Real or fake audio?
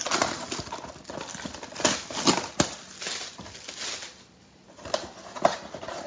real